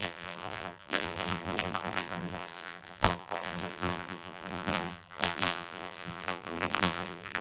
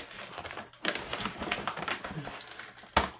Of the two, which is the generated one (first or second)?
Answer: first